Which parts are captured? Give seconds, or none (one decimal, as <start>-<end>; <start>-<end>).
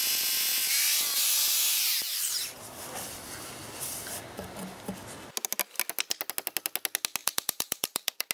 0.0-7.2